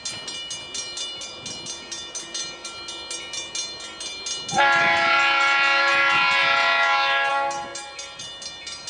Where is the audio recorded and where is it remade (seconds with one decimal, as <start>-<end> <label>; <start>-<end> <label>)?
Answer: 0.0-8.9 recorded